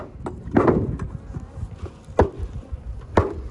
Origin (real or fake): real